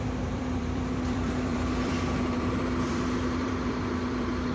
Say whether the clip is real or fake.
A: fake